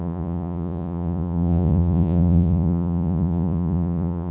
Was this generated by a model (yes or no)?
yes